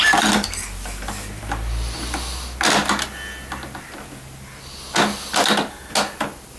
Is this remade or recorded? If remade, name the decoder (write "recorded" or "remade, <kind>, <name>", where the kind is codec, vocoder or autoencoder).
recorded